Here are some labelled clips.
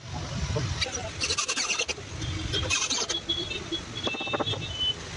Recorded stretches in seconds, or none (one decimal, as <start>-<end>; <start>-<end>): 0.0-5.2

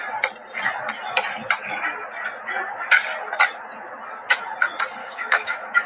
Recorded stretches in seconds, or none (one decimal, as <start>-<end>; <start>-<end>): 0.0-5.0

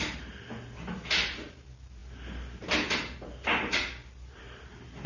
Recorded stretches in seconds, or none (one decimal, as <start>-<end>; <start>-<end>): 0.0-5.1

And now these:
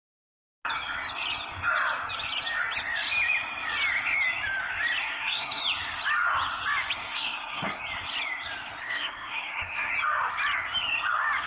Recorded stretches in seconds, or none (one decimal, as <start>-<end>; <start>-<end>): 0.0-5.0; 5.6-7.0; 7.8-8.8; 9.9-11.5

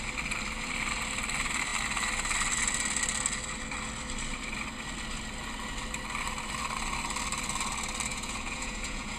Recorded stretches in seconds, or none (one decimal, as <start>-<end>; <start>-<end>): 0.0-8.1

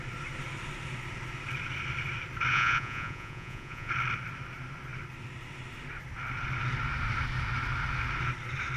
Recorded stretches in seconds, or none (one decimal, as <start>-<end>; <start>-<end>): 0.0-2.5; 3.9-8.8

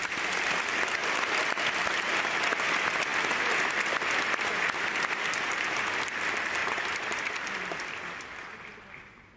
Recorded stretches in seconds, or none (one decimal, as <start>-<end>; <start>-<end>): 0.0-6.6; 7.3-9.4

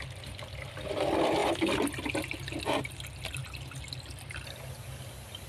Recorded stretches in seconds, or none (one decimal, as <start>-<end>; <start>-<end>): 0.0-5.5